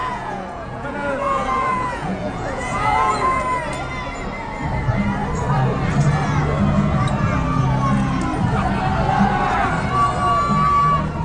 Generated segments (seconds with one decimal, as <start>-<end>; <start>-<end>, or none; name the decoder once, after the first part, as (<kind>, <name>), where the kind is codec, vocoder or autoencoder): 0.0-3.4 (vocoder, Vocos)

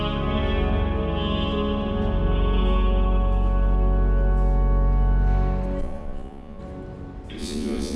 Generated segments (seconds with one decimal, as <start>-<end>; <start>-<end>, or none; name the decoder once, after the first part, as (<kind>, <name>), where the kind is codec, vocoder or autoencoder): 5.8-6.6 (vocoder, Vocos); 7.4-8.0

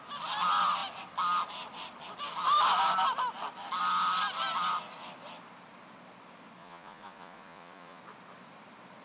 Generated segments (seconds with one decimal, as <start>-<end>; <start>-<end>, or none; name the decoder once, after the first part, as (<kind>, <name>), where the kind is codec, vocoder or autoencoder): 6.6-8.0 (vocoder, Vocos)

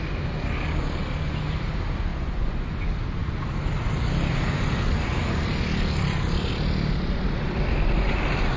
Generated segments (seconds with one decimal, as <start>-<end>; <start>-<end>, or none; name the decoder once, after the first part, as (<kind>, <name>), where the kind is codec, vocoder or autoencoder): 2.1-2.8 (vocoder, Vocos)

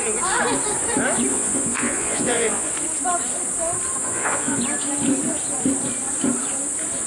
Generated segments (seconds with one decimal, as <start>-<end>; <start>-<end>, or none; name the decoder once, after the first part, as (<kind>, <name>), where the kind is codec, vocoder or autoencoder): 1.3-2.7 (vocoder, Vocos); 4.0-4.6

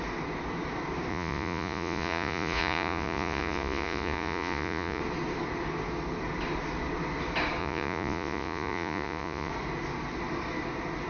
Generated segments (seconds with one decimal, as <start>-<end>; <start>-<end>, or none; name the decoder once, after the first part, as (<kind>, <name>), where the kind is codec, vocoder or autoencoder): 1.1-5.0 (vocoder, Vocos); 7.6-9.5

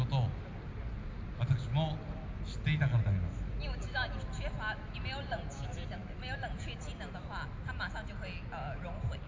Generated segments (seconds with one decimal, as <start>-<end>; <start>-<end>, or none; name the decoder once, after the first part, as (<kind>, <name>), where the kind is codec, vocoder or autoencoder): none

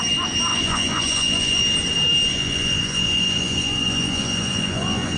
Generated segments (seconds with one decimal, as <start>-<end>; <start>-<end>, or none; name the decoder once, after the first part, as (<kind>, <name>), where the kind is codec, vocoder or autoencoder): 0.5-1.6 (vocoder, Vocos); 2.3-5.2